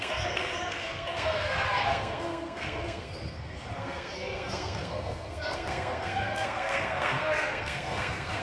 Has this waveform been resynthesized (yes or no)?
yes